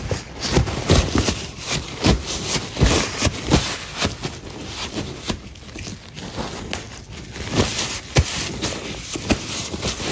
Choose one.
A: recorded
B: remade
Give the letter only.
A